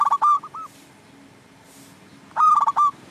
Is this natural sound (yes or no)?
yes